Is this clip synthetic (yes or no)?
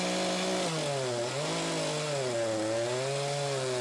no